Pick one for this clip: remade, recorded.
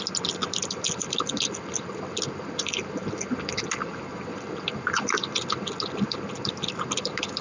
recorded